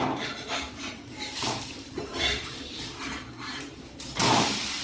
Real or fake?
fake